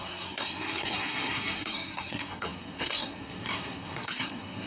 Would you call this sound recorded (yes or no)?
no